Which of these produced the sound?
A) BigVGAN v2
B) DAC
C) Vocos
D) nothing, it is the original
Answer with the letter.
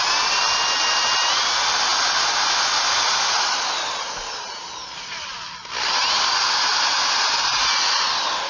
D